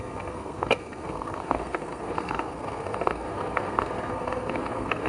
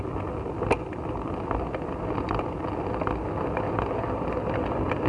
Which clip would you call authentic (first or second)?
second